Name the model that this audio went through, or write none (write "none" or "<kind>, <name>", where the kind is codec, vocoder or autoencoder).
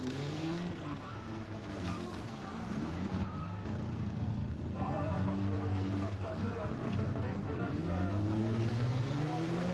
codec, SNAC